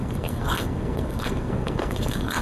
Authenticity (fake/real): fake